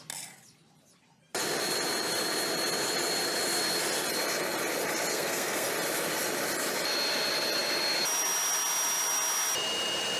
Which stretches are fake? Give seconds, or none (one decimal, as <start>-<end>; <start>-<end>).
5.1-5.7